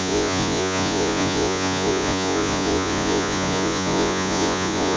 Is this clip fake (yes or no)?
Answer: yes